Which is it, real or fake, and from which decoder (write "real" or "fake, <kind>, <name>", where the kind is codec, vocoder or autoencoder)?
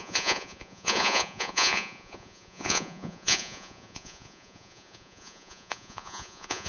fake, vocoder, Vocos